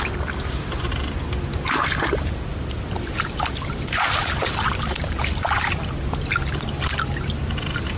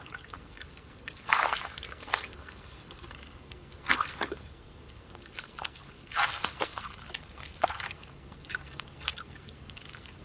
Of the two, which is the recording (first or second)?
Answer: first